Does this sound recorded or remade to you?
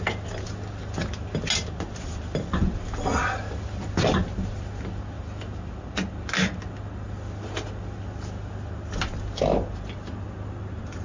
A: recorded